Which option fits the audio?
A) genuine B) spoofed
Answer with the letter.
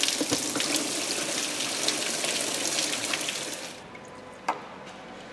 A